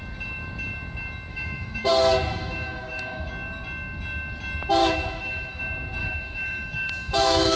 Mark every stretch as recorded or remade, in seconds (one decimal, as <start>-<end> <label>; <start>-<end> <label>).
0.0-1.3 recorded; 1.3-1.9 remade; 1.9-2.3 recorded; 2.3-3.3 remade; 3.3-4.8 recorded; 4.8-5.6 remade; 5.6-6.0 recorded; 6.0-7.6 remade